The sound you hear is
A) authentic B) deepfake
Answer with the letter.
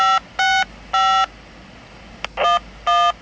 A